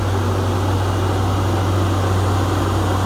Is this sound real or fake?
real